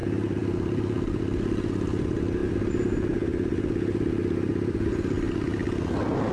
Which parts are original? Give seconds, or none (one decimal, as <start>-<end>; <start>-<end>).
0.0-6.3